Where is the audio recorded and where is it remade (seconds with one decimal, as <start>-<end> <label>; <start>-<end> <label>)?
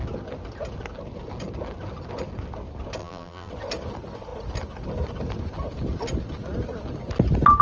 0.0-3.0 recorded; 3.0-3.5 remade; 3.5-7.6 recorded